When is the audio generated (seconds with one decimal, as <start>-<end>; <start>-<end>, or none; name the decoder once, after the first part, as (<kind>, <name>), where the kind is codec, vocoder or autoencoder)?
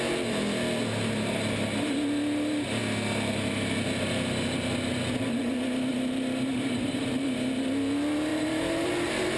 5.9-7.4 (vocoder, BigVGAN v2); 8.3-9.4